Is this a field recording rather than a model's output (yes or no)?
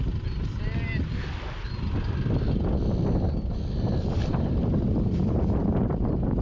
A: yes